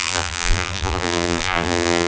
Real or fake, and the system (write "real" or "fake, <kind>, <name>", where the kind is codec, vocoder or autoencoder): fake, vocoder, BigVGAN v2